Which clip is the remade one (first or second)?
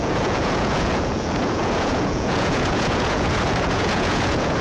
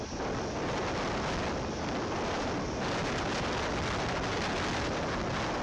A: first